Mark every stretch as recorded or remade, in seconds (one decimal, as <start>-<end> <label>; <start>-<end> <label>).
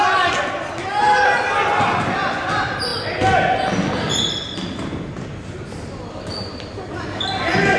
0.0-7.8 recorded